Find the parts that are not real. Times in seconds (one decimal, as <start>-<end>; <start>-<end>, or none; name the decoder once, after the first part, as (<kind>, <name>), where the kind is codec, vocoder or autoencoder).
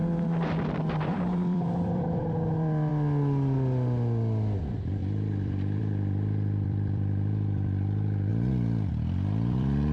0.0-2.9 (vocoder, BigVGAN v2); 4.6-8.3; 8.9-9.9